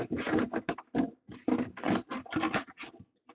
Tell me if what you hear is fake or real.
real